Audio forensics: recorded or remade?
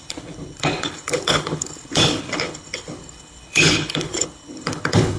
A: remade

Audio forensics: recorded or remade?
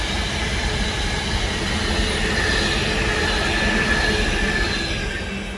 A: recorded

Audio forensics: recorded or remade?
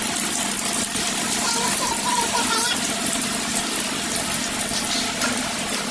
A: recorded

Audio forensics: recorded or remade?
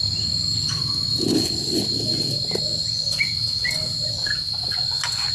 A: recorded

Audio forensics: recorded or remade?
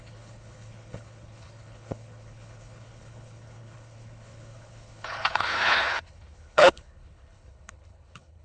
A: remade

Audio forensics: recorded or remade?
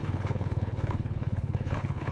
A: remade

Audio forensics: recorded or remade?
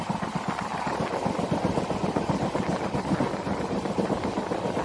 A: recorded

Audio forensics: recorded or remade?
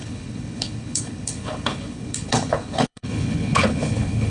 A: remade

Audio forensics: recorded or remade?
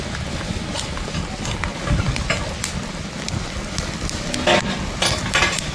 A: recorded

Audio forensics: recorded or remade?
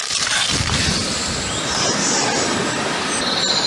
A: recorded